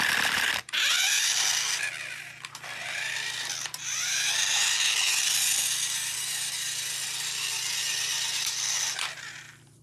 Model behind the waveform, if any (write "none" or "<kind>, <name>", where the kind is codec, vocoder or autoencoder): vocoder, BigVGAN v2